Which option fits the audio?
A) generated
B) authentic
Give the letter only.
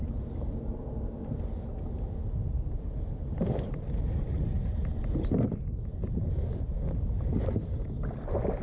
B